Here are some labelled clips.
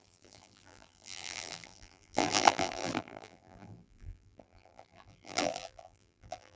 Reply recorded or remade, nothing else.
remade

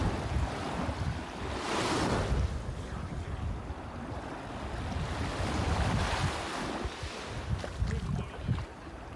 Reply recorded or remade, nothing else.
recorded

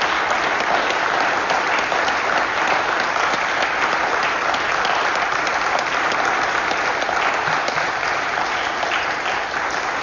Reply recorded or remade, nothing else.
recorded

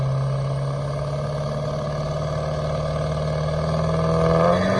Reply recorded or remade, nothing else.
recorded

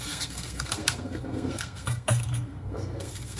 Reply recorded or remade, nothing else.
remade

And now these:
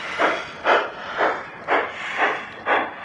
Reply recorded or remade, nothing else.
recorded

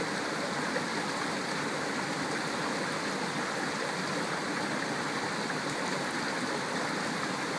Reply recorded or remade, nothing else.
recorded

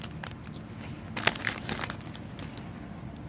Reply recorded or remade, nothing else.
recorded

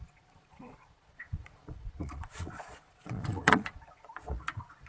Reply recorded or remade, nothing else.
remade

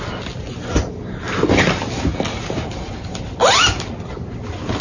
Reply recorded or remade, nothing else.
recorded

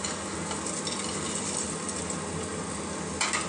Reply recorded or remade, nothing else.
recorded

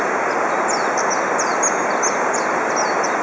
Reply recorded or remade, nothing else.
recorded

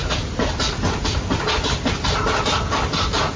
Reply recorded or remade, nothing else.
recorded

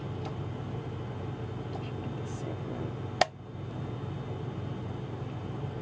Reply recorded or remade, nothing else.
recorded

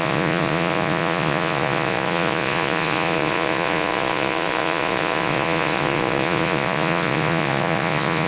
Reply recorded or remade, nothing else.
remade